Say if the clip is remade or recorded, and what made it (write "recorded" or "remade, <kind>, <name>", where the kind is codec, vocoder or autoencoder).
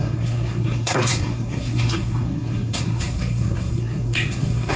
remade, codec, SNAC